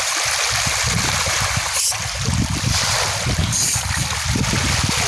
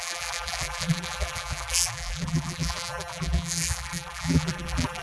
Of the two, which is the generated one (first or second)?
second